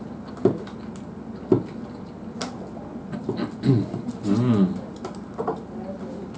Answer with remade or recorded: recorded